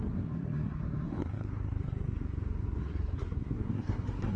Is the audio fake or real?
fake